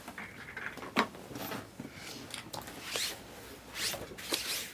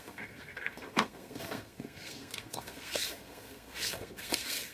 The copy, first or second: second